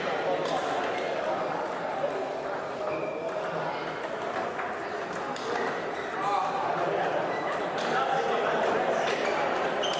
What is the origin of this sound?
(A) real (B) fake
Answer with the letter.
A